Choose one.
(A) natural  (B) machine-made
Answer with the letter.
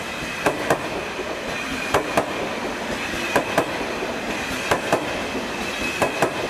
A